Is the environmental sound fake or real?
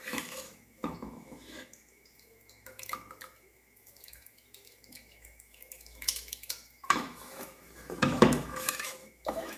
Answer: fake